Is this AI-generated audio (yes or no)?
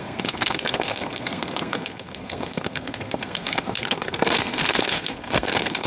yes